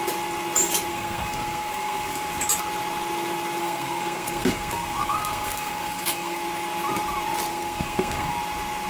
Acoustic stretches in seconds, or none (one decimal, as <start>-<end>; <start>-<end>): 0.0-0.9; 2.3-3.6; 6.4-7.5; 8.3-8.9